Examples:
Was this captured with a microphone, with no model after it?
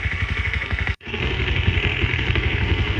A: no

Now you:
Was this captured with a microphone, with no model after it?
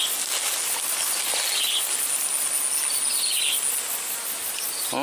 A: yes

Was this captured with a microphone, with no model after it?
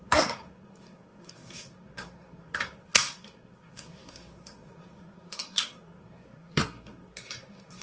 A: no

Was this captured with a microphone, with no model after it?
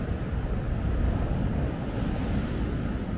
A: yes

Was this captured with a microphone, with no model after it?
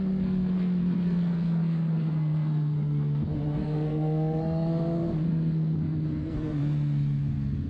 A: no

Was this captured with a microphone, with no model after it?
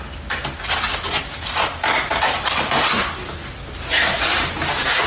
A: yes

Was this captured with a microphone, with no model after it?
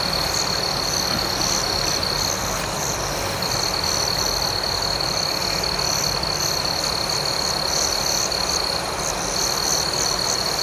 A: yes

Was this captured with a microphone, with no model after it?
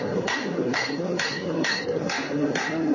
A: no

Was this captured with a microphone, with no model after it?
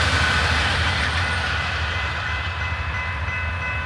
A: yes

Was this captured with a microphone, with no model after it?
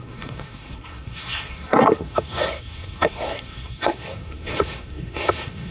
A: no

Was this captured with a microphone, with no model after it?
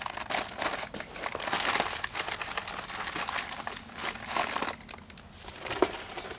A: yes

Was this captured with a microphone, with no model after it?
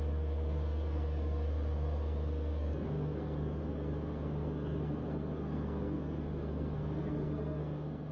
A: no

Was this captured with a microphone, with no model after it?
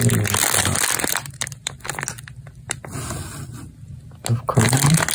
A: yes